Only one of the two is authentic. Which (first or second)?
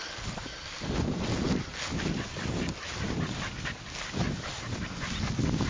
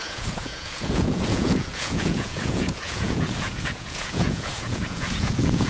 first